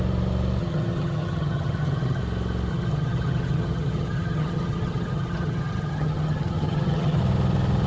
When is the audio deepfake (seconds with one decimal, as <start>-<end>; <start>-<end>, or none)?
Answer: 0.6-2.2; 2.7-7.2